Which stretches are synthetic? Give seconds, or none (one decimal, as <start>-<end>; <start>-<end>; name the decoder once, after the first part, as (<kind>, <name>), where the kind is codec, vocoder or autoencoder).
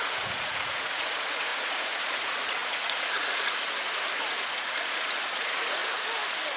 0.0-5.8 (vocoder, Vocos)